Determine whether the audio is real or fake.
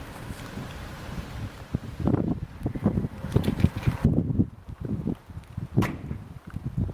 fake